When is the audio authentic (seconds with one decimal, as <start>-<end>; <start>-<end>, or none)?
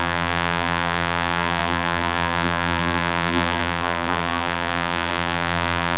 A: none